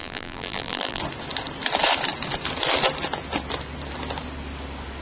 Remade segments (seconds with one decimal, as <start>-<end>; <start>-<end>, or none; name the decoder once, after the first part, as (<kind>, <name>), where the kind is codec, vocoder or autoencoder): 0.0-1.0 (vocoder, BigVGAN v2)